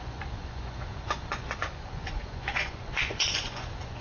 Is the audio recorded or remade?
remade